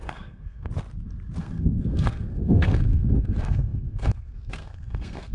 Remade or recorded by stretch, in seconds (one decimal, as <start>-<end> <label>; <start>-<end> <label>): 0.0-0.7 remade; 0.7-1.4 recorded; 1.4-5.3 remade

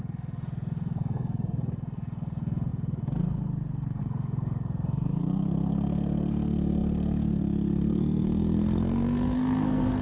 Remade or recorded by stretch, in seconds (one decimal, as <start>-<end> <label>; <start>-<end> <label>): 0.0-10.0 remade

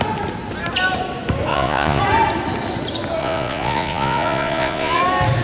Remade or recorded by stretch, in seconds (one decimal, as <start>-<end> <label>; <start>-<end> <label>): 0.0-1.5 recorded; 1.5-2.0 remade; 2.0-3.2 recorded; 3.2-5.0 remade; 5.0-5.4 recorded

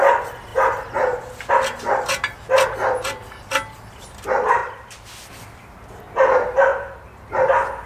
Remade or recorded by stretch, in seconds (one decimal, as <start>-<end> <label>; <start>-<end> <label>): 0.0-6.7 recorded; 6.7-7.3 remade; 7.3-7.9 recorded